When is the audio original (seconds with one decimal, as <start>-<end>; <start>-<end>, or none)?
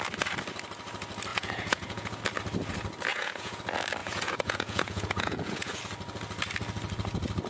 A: 0.0-1.3; 2.2-3.1; 3.6-4.0; 5.8-7.5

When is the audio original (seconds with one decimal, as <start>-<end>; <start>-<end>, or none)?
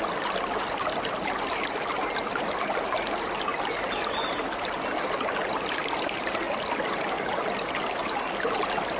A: 0.0-9.0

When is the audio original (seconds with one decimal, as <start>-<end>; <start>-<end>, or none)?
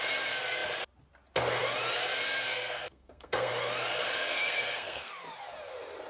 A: 0.0-2.5; 3.5-4.0; 5.1-6.1